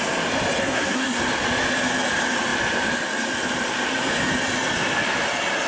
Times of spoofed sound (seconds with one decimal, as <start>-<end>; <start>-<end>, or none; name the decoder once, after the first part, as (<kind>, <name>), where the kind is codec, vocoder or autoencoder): 0.6-1.2 (codec, SNAC)